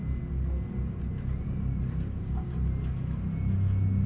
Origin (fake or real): real